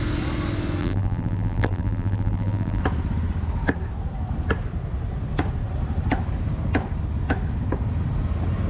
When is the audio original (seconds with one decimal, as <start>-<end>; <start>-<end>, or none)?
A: 0.0-0.8; 2.8-8.7